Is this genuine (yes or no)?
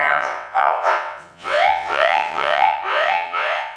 no